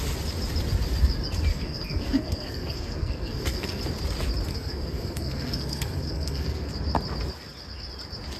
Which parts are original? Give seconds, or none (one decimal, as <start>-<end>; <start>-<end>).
0.0-1.5; 3.8-4.5; 6.7-8.4